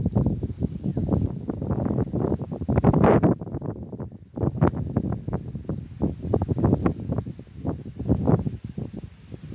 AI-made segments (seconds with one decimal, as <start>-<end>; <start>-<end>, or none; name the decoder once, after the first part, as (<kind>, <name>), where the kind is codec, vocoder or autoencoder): none